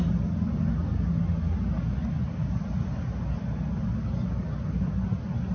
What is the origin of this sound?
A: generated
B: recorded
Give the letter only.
B